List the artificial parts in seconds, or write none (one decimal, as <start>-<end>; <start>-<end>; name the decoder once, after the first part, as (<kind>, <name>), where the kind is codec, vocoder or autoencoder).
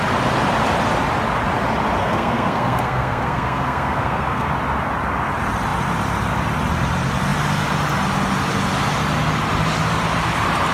2.0-4.5 (codec, SNAC)